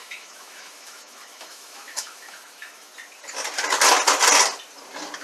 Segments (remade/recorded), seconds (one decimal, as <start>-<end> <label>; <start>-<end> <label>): 0.0-2.9 remade; 2.9-5.2 recorded

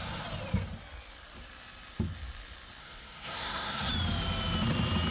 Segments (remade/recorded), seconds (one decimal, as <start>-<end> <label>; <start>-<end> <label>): 0.0-2.8 recorded; 2.8-3.9 remade; 3.9-5.1 recorded

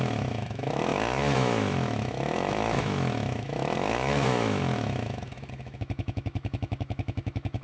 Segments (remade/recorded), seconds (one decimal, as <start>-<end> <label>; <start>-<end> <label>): 0.0-7.6 remade

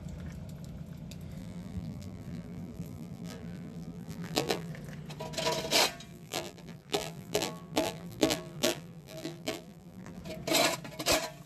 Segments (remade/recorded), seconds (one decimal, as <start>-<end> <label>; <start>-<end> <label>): 0.0-1.4 recorded; 1.4-4.7 remade; 4.7-6.1 recorded; 6.1-10.2 remade; 10.2-11.5 recorded

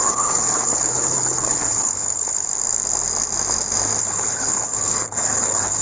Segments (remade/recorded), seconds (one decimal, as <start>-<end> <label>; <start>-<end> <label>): 0.0-2.5 remade; 2.5-4.0 recorded; 4.0-5.8 remade

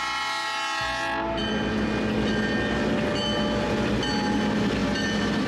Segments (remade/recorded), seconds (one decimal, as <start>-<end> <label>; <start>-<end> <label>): 0.0-5.5 recorded